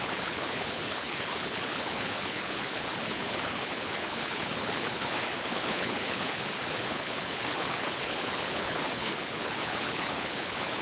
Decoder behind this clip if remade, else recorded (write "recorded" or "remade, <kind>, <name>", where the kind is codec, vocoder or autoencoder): remade, codec, HILCodec